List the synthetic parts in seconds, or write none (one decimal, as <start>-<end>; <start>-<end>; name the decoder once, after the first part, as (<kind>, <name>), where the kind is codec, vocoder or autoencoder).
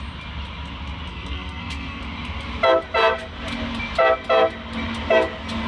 1.1-2.0 (codec, SNAC)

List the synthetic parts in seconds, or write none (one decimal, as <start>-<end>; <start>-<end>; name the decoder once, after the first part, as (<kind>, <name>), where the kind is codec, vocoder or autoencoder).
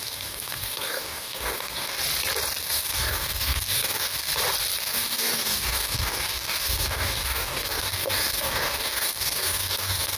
0.0-2.0 (codec, DAC); 2.6-4.3; 4.8-10.2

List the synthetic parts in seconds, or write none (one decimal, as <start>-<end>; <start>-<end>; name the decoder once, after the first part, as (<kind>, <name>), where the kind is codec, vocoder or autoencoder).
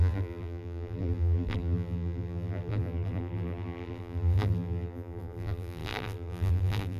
0.0-7.0 (vocoder, BigVGAN v2)